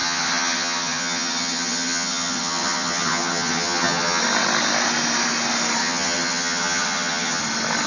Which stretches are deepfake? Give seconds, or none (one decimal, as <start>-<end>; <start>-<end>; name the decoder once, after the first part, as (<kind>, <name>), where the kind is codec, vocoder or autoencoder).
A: 0.0-4.2 (vocoder, HiFi-GAN); 5.8-7.4